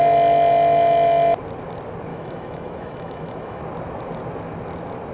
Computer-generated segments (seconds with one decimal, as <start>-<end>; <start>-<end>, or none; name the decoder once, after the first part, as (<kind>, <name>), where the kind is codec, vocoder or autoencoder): 2.1-3.6 (autoencoder, DAC-VAE)